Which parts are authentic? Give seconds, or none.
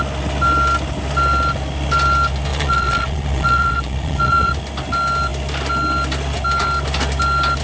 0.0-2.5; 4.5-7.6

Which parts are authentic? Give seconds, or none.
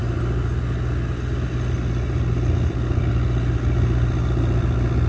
0.0-5.1